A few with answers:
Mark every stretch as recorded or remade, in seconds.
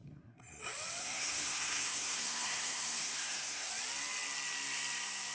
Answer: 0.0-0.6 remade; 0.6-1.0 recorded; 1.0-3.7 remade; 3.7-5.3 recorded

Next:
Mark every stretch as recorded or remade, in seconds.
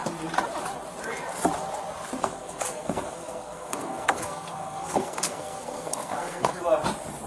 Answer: 0.0-2.2 recorded; 2.2-6.6 remade; 6.6-7.3 recorded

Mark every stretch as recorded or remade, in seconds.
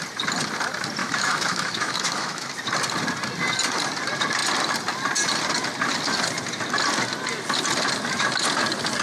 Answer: 0.0-1.0 recorded; 1.0-2.5 remade; 2.5-9.0 recorded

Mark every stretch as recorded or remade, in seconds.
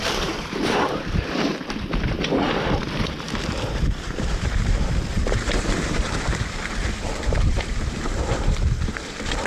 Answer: 0.0-1.5 remade; 1.5-3.9 recorded; 3.9-9.5 remade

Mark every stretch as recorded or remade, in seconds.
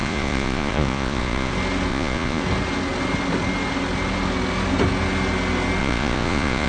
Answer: 0.0-1.5 remade; 1.5-1.9 recorded; 1.9-2.4 remade; 2.4-5.8 recorded; 5.8-6.7 remade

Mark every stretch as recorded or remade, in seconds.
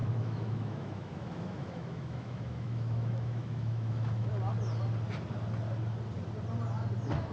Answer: 0.0-4.3 remade; 4.3-7.3 recorded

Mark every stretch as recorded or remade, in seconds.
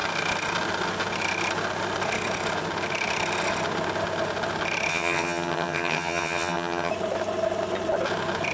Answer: 0.0-4.9 recorded; 4.9-6.9 remade; 6.9-8.5 recorded